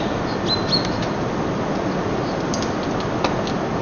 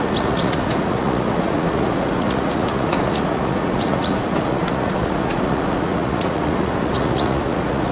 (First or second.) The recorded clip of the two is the first